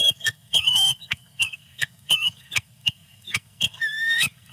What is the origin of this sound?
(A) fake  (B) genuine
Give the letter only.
A